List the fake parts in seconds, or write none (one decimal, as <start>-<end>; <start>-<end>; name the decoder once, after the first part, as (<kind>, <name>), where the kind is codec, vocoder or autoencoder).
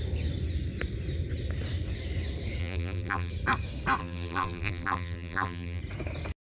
2.6-3.3 (vocoder, BigVGAN v2); 4.0-5.8